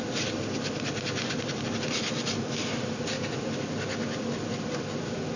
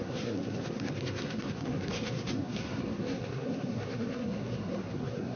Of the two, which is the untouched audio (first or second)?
first